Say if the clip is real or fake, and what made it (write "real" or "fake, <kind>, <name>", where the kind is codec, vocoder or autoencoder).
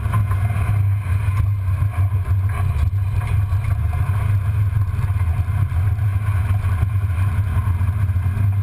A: real